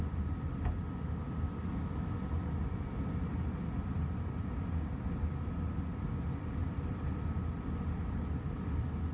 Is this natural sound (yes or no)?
yes